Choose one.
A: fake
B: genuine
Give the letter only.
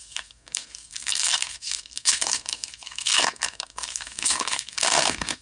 A